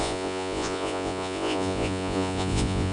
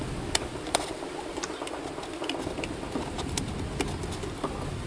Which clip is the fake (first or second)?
first